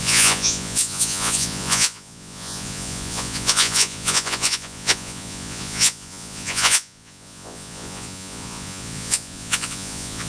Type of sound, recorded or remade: remade